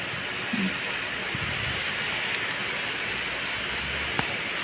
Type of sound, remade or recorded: recorded